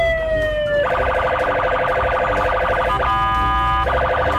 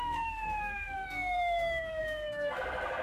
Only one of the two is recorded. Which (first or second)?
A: first